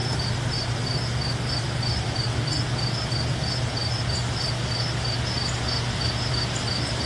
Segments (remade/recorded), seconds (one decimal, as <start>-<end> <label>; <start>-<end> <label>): 0.0-7.0 recorded